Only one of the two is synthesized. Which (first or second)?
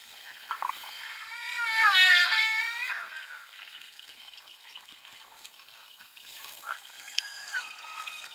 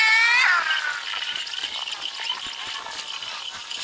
first